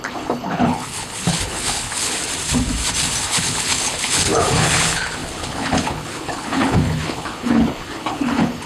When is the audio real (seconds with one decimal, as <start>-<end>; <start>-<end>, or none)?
2.2-3.3

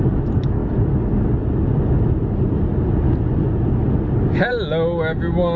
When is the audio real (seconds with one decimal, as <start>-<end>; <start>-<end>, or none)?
0.0-5.6